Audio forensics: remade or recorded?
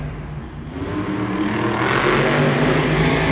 recorded